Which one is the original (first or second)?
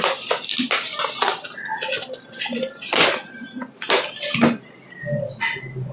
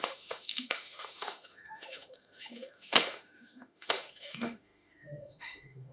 first